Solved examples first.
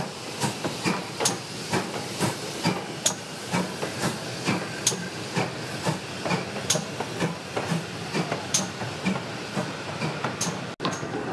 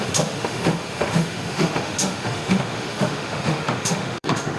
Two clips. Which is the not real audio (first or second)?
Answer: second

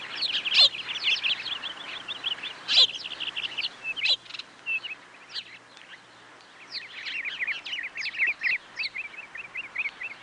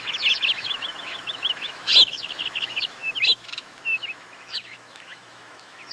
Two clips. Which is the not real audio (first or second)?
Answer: second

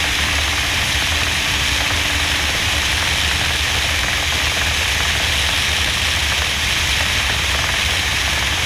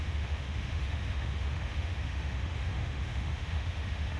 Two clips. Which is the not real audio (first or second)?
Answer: second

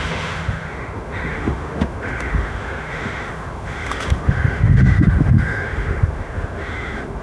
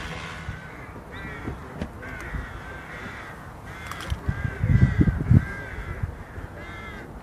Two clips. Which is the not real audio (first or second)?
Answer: first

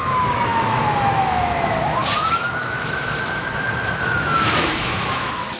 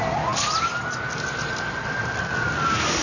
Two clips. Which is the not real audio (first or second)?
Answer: first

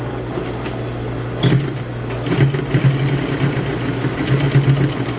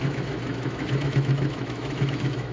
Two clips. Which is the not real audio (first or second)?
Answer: second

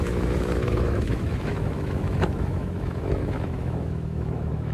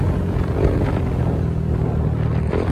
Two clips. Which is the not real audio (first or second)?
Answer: first